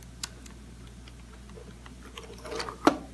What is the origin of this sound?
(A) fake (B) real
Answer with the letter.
B